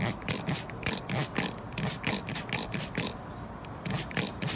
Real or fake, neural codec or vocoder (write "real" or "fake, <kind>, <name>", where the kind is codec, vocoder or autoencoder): real